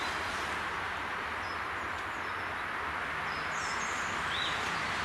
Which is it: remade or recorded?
recorded